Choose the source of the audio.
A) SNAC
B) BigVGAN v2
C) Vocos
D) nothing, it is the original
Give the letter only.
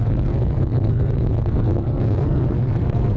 A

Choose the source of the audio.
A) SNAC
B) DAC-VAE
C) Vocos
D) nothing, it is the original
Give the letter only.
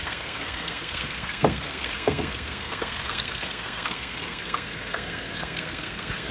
A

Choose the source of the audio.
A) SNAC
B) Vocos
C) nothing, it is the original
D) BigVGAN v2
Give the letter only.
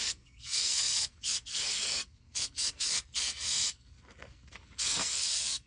A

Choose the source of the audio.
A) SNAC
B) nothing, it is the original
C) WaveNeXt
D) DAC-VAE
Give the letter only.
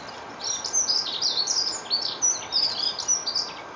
B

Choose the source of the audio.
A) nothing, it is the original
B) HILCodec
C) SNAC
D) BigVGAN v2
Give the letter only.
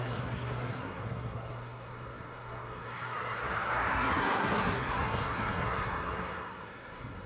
C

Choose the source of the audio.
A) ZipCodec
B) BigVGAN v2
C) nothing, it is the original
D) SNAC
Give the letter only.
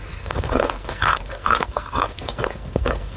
D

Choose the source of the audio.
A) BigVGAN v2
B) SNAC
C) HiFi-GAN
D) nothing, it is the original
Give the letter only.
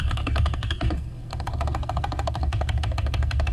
B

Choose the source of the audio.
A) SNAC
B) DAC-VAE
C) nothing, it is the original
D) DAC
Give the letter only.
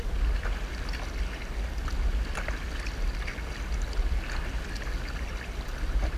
C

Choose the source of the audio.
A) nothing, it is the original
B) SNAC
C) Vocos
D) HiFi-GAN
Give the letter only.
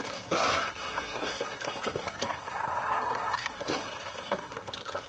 B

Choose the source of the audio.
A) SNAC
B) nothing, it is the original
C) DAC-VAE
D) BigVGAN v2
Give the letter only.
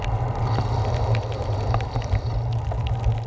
B